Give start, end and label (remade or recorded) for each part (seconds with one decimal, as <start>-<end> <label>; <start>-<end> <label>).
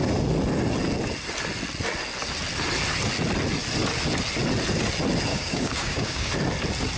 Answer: 0.0-5.3 recorded; 5.3-6.3 remade; 6.3-7.0 recorded